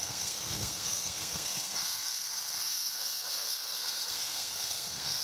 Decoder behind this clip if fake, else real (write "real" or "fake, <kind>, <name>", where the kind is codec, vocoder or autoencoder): fake, codec, SNAC